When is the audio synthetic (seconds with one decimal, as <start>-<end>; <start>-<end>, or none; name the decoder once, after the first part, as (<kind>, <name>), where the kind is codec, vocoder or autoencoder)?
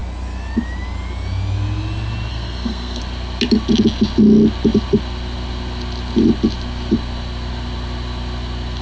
2.3-3.0 (codec, SNAC)